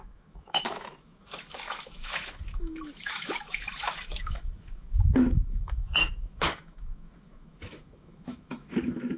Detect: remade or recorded remade